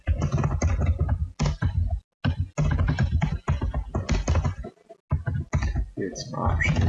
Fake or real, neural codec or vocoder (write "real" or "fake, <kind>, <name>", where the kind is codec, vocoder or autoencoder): real